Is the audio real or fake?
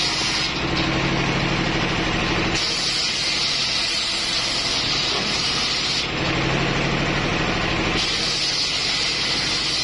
real